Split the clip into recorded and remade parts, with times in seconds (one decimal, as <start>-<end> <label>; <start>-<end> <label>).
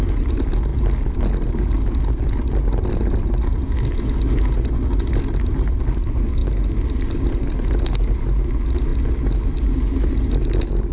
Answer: 0.0-10.9 recorded